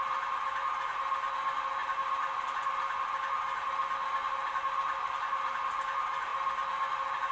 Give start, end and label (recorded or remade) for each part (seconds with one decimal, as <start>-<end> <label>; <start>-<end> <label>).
0.0-7.3 recorded